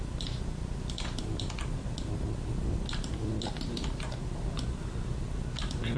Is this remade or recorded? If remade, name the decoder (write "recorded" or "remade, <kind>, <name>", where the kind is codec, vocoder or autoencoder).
recorded